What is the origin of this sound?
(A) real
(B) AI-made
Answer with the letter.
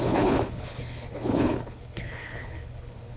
B